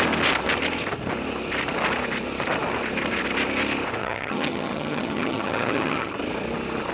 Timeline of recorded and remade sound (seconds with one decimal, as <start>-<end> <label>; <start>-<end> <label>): 0.0-4.0 recorded; 4.0-6.1 remade; 6.1-6.9 recorded